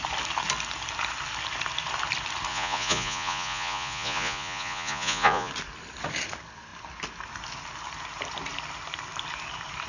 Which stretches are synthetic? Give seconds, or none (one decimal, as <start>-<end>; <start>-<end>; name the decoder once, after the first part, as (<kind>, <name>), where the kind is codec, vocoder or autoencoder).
2.5-5.5 (vocoder, Vocos)